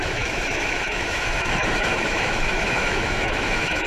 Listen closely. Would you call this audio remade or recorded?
remade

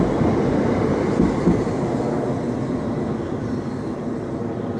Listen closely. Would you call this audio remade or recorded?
recorded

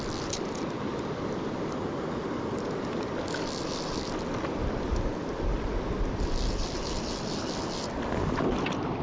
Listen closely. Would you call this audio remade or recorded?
recorded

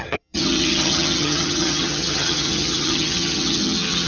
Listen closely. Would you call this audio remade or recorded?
remade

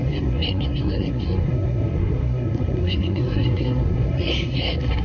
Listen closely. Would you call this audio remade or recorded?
remade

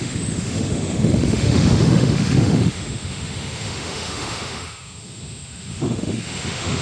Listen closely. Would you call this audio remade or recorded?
remade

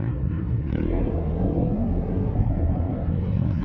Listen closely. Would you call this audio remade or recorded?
remade